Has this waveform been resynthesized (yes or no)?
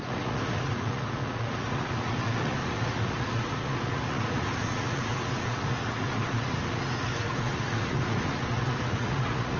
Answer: yes